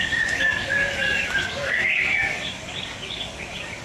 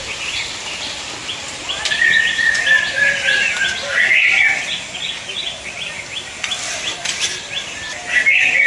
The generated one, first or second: first